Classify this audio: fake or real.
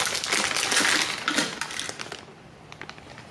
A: real